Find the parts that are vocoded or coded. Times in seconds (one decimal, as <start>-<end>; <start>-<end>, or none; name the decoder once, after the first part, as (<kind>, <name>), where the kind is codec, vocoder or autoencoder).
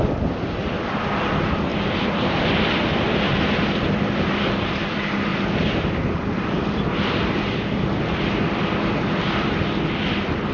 none